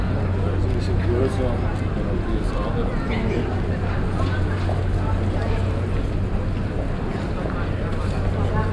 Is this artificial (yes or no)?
no